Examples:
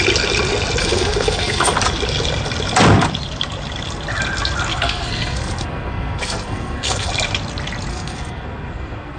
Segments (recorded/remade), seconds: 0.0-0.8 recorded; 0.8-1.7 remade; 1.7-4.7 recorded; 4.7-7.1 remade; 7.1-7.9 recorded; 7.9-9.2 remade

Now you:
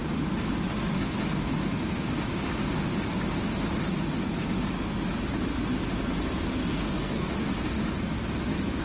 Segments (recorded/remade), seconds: 0.0-6.6 recorded; 6.6-7.3 remade; 7.3-8.8 recorded

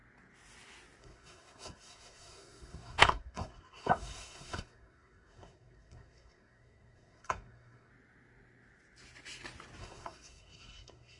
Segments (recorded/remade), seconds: 0.0-1.0 recorded; 1.0-7.9 remade; 7.9-9.8 recorded; 9.8-11.2 remade

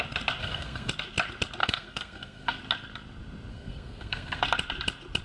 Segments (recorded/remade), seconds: 0.0-0.4 recorded; 0.4-0.9 remade; 0.9-1.6 recorded; 1.6-2.6 remade; 2.6-3.5 recorded; 3.5-4.4 remade; 4.4-5.2 recorded

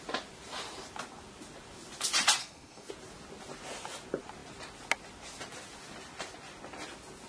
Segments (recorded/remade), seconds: 0.0-2.4 recorded; 2.4-2.9 remade; 2.9-7.3 recorded

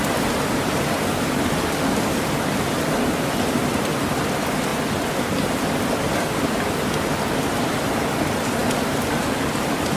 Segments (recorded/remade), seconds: 0.0-10.0 recorded

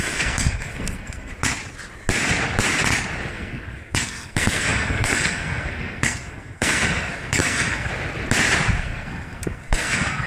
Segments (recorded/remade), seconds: 0.0-1.3 remade; 1.3-3.3 recorded; 3.3-7.9 remade; 7.9-8.8 recorded; 8.8-10.3 remade